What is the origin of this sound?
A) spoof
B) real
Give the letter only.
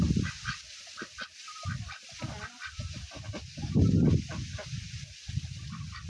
B